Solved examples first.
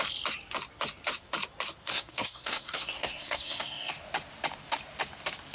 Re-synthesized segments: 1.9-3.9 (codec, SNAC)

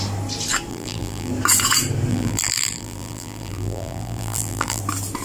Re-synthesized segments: 0.7-1.3 (vocoder, BigVGAN v2); 2.1-4.8

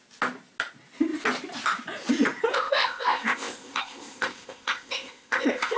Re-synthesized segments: 2.5-5.8 (codec, ZipCodec)

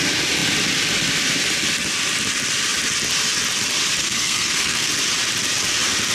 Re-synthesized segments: 4.0-4.9 (codec, SNAC)

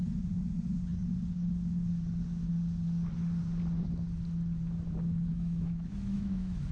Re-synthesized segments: 5.3-6.7 (autoencoder, DAC-VAE)